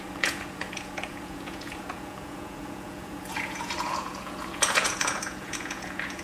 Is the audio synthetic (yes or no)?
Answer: yes